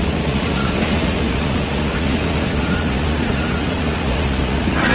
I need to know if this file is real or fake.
fake